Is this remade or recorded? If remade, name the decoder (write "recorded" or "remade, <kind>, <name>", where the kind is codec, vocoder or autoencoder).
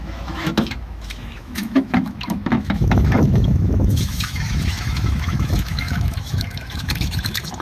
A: remade, autoencoder, DAC-VAE